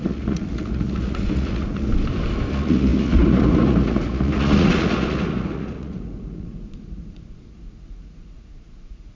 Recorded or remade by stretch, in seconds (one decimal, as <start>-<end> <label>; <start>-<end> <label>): 0.0-1.9 remade; 1.9-2.5 recorded; 2.5-9.2 remade